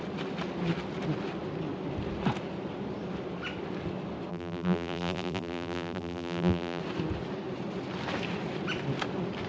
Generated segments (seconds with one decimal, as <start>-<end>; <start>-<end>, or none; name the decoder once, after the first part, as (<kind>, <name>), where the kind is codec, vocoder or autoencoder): 4.3-6.8 (vocoder, BigVGAN v2)